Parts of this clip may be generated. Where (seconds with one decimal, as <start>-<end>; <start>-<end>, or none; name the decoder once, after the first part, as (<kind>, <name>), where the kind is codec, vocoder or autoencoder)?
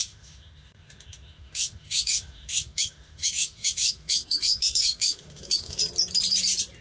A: 0.0-5.8 (autoencoder, DAC-VAE)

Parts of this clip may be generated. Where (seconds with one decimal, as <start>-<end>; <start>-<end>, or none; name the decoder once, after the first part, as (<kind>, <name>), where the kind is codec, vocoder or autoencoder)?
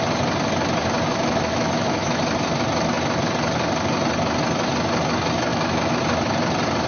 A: 1.1-2.2 (autoencoder, DAC-VAE); 5.5-6.0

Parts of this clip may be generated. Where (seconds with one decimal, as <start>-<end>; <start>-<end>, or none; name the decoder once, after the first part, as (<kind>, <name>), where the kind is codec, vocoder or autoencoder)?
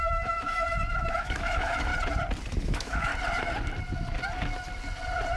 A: 0.0-1.9 (autoencoder, DAC-VAE); 2.6-3.1